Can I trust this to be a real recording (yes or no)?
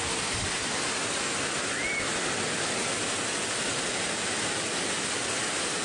yes